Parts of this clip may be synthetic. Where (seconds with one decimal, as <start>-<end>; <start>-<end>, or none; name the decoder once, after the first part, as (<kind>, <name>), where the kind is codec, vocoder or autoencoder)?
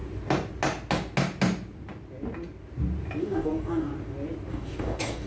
3.2-3.9 (codec, DAC); 4.5-5.3